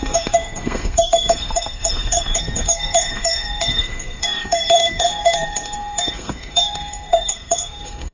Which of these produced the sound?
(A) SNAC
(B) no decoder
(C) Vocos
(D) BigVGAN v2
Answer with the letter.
A